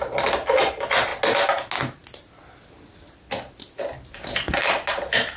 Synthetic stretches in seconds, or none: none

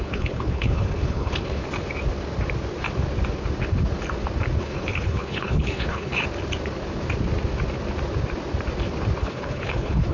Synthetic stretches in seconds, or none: 0.0-1.6 (codec, HILCodec); 4.6-6.1; 9.2-10.1

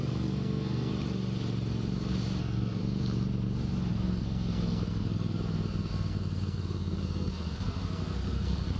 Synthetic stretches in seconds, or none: 0.0-0.9 (codec, SNAC); 2.4-2.8; 3.9-8.8

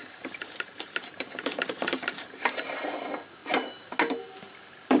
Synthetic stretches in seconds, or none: 0.0-2.8 (vocoder, BigVGAN v2); 3.4-3.9

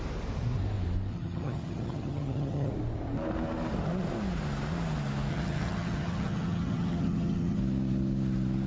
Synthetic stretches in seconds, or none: 1.1-2.7 (vocoder, HiFi-GAN); 5.3-7.6

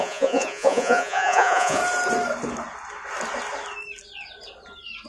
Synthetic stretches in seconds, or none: 0.0-1.8 (vocoder, Vocos)